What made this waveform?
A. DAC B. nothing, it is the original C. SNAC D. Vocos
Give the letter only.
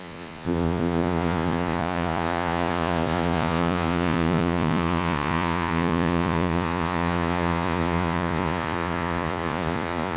D